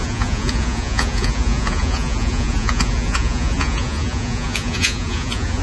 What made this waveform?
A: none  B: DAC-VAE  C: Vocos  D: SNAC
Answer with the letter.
C